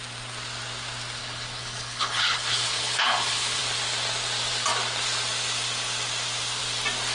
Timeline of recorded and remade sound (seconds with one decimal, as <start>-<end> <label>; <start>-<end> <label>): 0.0-1.2 recorded; 1.2-3.6 remade; 3.6-7.1 recorded